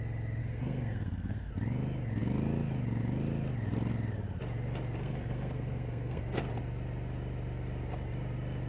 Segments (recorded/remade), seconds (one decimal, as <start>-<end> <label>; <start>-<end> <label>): 0.0-0.4 recorded; 0.4-1.5 remade; 1.5-5.0 recorded; 5.0-6.2 remade; 6.2-8.7 recorded